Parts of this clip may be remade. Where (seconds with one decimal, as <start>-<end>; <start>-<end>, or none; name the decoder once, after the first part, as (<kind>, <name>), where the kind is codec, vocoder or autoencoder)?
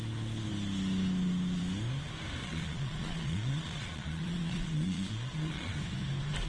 2.4-5.7 (vocoder, Vocos)